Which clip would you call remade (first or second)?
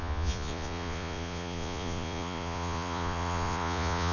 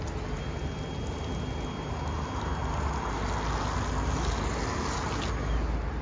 first